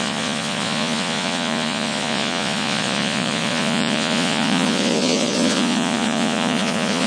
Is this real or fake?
fake